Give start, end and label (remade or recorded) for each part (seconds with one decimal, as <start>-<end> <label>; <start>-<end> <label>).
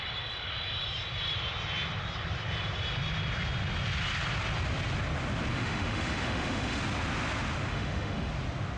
0.0-5.5 recorded; 5.5-6.8 remade; 6.8-7.7 recorded; 7.7-8.3 remade; 8.3-8.8 recorded